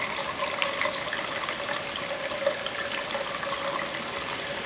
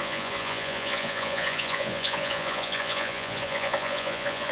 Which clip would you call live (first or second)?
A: first